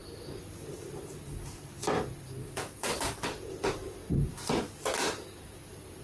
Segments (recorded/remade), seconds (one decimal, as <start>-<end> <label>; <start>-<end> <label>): 0.0-6.0 recorded